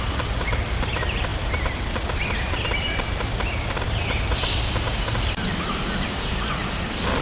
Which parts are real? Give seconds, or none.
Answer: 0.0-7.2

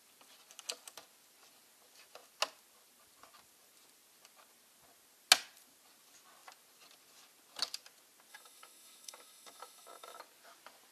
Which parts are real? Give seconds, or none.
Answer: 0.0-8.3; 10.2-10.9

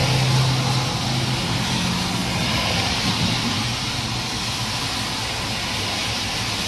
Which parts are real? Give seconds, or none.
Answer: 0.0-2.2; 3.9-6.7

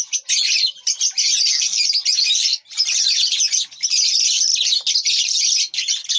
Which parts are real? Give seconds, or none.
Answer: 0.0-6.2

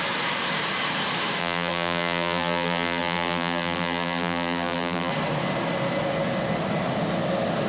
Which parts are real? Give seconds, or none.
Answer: 0.0-1.4; 5.1-7.7